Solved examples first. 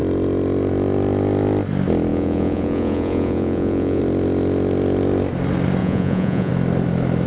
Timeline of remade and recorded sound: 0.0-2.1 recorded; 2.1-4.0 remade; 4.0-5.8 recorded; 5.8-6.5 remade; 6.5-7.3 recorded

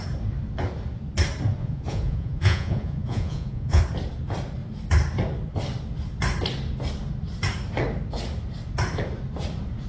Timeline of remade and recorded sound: 0.0-1.6 recorded; 1.6-3.8 remade; 3.8-9.9 recorded

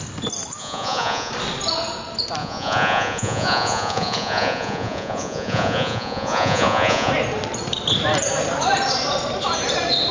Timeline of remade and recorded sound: 0.0-0.6 recorded; 0.6-1.3 remade; 1.3-2.4 recorded; 2.4-7.1 remade; 7.1-10.1 recorded

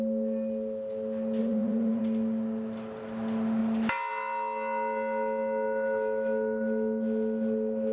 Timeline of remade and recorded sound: 0.0-1.4 recorded; 1.4-2.0 remade; 2.0-7.9 recorded